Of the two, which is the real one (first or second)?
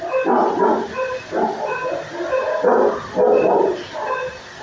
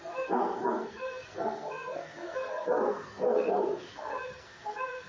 first